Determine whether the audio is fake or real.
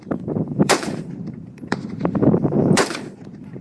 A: fake